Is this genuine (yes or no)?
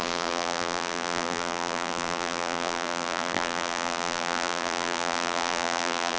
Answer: no